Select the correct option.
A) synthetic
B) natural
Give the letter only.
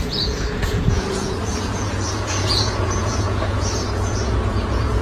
A